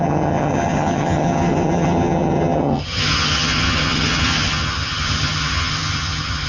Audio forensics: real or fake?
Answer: fake